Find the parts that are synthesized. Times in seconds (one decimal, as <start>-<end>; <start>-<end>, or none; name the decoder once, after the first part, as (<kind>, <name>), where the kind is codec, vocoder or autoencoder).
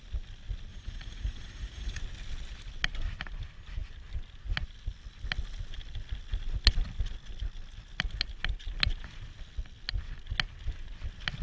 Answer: 0.7-2.0 (vocoder, Vocos)